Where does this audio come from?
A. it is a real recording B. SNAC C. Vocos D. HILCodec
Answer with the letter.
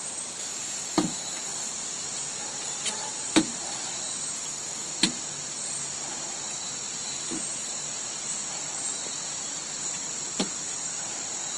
A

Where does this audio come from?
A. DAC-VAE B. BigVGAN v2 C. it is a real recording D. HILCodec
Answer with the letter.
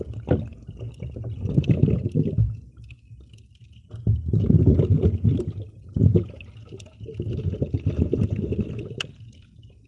C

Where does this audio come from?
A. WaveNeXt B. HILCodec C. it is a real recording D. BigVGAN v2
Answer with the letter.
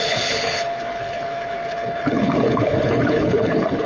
B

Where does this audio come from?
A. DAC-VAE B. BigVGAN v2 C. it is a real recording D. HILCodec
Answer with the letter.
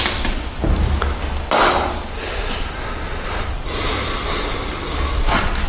C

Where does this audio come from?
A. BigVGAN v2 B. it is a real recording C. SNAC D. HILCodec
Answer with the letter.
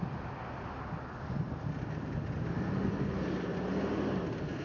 B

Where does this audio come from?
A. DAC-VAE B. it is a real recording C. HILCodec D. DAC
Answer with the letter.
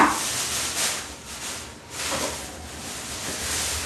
B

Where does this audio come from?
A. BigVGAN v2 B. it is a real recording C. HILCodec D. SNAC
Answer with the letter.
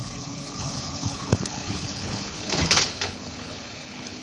C